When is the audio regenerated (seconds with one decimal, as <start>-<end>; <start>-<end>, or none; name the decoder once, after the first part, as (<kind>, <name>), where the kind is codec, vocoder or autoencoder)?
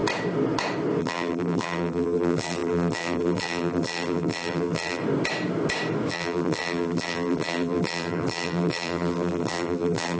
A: 1.0-5.0 (vocoder, BigVGAN v2); 6.1-10.2